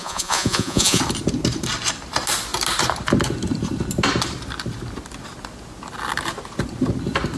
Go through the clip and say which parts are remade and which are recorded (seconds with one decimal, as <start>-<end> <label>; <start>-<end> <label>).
0.0-1.0 remade; 1.0-7.4 recorded